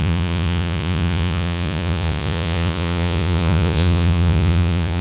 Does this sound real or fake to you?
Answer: fake